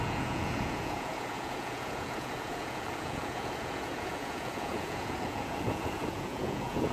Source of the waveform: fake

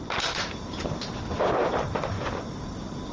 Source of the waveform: real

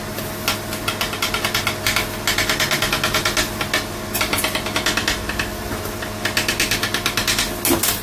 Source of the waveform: real